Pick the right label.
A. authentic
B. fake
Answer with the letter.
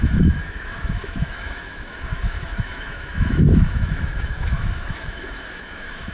B